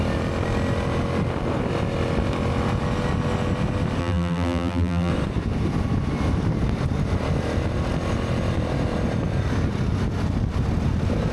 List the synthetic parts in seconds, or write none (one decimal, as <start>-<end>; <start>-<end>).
4.0-5.1